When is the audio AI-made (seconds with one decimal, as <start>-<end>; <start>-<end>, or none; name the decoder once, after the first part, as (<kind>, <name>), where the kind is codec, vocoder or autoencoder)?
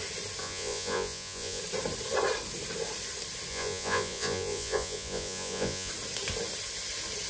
0.4-1.6 (vocoder, Vocos); 3.5-5.9